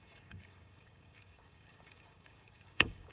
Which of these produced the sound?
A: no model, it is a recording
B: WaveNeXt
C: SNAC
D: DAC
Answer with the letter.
D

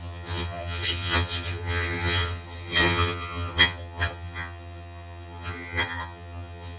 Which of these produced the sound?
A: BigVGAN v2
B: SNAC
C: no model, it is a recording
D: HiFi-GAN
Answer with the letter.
D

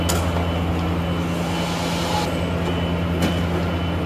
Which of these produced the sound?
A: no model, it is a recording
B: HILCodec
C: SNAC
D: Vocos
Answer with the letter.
A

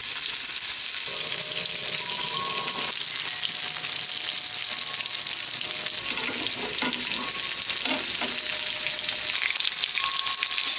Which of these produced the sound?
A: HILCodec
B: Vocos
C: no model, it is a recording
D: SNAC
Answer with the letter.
C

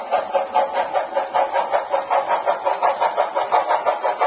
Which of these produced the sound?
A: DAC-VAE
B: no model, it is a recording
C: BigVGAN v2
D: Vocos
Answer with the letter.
B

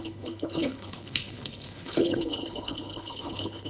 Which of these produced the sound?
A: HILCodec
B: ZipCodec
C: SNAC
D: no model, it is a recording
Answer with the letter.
A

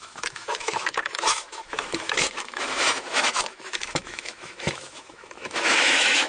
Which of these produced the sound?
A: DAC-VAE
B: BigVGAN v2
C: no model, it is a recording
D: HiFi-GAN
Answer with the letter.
A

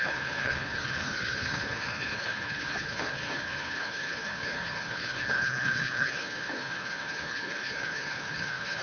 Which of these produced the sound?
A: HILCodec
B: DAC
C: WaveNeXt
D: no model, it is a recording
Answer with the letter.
A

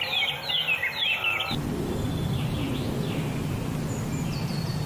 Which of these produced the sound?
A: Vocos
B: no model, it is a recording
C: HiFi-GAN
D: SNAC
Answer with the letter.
B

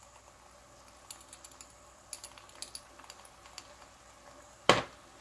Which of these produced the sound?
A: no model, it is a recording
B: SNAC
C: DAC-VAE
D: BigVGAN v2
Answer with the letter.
A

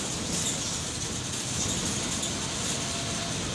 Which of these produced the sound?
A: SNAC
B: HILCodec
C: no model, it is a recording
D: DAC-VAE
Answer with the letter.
C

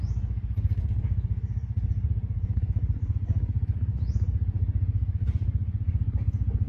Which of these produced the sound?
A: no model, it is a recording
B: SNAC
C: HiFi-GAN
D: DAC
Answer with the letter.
A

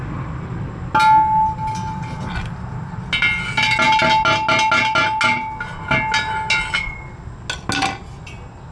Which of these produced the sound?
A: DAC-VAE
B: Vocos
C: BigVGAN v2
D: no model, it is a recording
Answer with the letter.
D